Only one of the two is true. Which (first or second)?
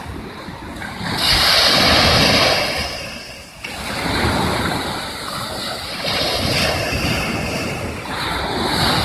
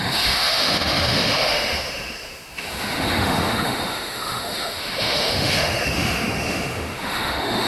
first